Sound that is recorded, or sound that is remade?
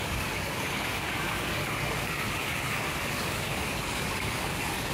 remade